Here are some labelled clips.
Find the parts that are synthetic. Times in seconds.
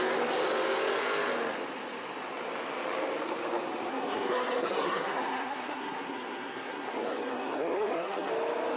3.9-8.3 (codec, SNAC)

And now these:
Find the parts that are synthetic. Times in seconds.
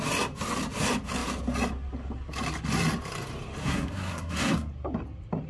3.6-4.7 (codec, SNAC)